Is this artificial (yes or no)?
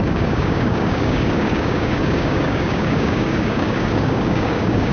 yes